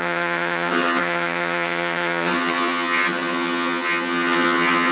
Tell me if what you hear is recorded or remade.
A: remade